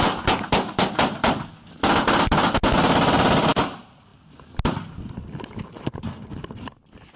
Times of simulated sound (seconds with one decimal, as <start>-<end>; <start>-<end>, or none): none